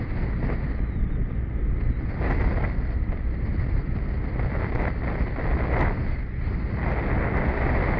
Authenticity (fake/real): real